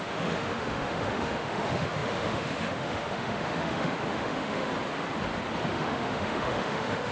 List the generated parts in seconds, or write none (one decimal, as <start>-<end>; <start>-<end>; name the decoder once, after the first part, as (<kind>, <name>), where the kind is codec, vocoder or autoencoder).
0.0-4.7 (autoencoder, DAC-VAE); 5.7-7.1